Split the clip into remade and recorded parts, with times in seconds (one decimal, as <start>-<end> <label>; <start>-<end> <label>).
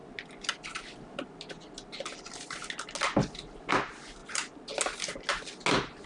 0.0-6.1 recorded